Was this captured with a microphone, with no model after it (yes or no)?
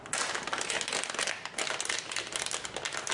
yes